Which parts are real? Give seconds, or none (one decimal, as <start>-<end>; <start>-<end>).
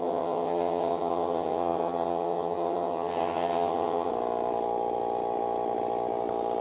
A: 4.1-6.6